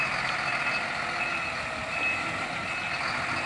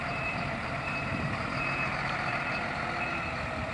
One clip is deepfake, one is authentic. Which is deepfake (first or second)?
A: second